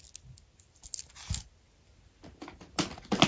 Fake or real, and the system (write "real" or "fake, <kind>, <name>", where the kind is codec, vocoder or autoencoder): real